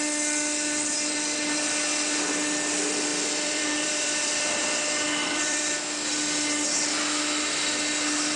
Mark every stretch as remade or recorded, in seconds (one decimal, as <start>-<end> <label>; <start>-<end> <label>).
0.0-3.1 recorded; 3.1-4.6 remade; 4.6-5.2 recorded; 5.2-5.8 remade; 5.8-8.4 recorded